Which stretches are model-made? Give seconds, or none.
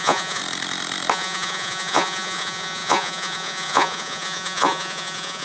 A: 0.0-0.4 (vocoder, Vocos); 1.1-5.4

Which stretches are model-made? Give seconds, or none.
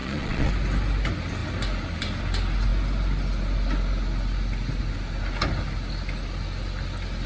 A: 0.0-0.5 (vocoder, Vocos)